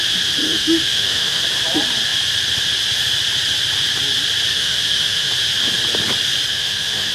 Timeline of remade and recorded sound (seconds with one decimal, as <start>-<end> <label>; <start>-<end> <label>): 0.0-0.4 recorded; 0.4-1.4 remade; 1.4-4.5 recorded; 4.5-5.3 remade; 5.3-6.5 recorded; 6.5-7.1 remade